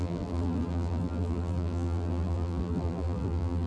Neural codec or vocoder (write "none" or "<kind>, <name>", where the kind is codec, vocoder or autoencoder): vocoder, BigVGAN v2